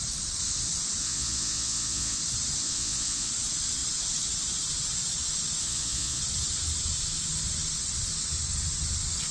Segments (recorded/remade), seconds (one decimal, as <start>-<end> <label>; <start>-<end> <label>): 0.0-1.0 recorded; 1.0-2.2 remade; 2.2-2.6 recorded; 2.6-3.3 remade; 3.3-5.6 recorded; 5.6-6.2 remade; 6.2-9.3 recorded